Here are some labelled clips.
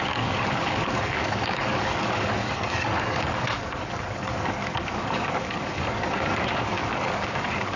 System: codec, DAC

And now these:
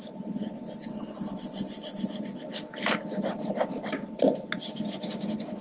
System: none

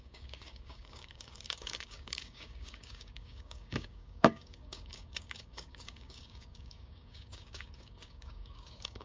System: codec, DAC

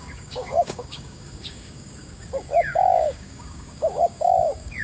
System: codec, DAC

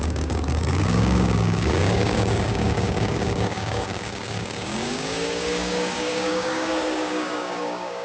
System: codec, DAC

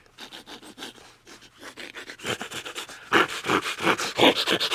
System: none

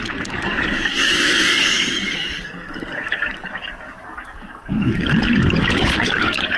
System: codec, DAC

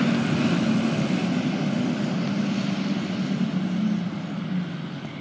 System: none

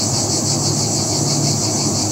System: none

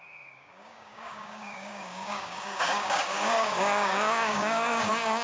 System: codec, DAC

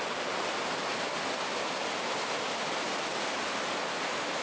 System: none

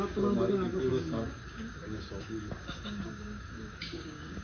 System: codec, DAC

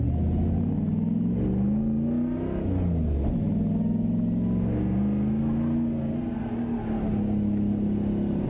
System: none